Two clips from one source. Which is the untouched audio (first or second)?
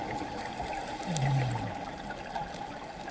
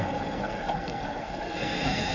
first